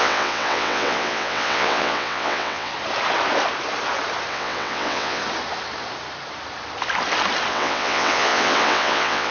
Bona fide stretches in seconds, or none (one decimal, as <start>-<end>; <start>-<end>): 2.7-4.3; 5.2-7.5

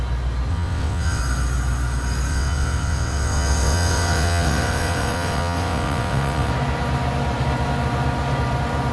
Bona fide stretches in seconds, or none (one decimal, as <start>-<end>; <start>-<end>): 0.0-0.5; 1.2-2.3; 6.5-8.9

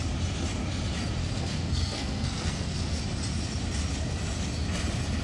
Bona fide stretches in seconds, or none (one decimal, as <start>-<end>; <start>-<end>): 0.0-1.2; 3.0-5.2

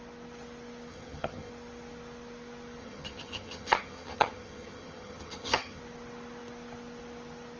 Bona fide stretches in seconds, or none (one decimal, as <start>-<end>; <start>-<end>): 0.0-0.9; 1.5-2.8; 5.8-7.6

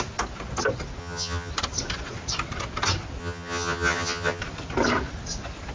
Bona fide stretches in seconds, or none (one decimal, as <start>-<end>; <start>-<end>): 0.0-1.0; 1.5-3.2; 4.4-5.7

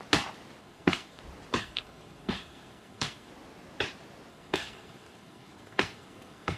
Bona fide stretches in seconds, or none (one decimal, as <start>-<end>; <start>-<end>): 0.0-0.6; 1.2-1.6; 3.3-4.3

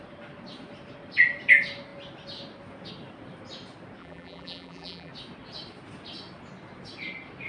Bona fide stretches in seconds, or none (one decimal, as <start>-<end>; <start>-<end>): 0.0-4.0; 5.1-7.5

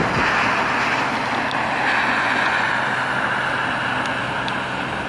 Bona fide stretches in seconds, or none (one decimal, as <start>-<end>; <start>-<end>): 0.0-2.0; 2.7-5.1